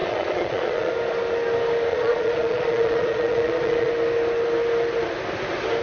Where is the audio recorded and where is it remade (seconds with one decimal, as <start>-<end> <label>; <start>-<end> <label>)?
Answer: 0.0-0.9 remade; 0.9-1.9 recorded; 1.9-3.9 remade; 3.9-5.8 recorded